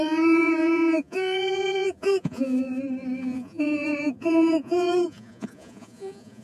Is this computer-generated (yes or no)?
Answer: yes